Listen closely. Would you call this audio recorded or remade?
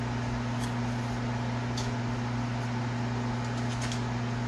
recorded